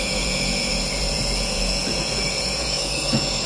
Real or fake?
fake